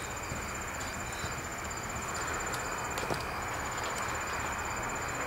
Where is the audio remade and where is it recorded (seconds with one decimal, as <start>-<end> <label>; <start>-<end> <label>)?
0.0-5.3 recorded